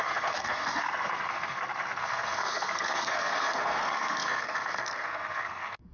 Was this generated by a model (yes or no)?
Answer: yes